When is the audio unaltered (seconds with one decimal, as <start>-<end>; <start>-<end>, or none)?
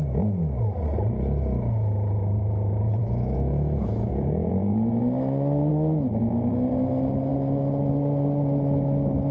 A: 0.0-3.0; 4.1-9.3